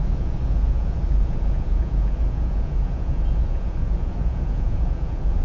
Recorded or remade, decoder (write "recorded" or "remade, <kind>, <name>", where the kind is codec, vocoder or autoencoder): remade, vocoder, Vocos